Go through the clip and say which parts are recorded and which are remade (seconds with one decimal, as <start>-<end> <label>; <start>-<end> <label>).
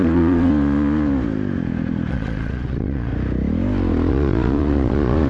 0.0-0.5 remade; 0.5-2.1 recorded; 2.1-3.1 remade; 3.1-4.1 recorded; 4.1-5.3 remade